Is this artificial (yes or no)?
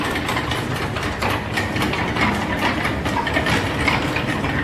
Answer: no